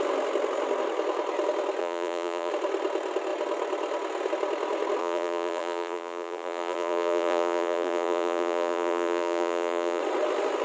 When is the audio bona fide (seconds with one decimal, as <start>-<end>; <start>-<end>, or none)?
0.0-1.8; 2.5-5.0; 10.0-10.6